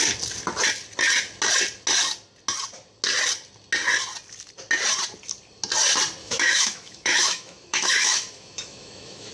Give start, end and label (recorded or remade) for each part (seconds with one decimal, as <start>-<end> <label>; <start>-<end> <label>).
0.0-6.2 recorded; 6.2-9.3 remade